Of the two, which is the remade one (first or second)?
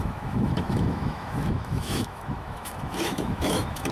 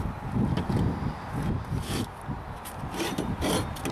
first